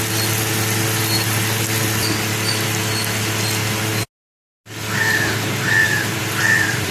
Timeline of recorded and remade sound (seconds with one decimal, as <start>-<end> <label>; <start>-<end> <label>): 0.0-5.8 recorded; 5.8-6.9 remade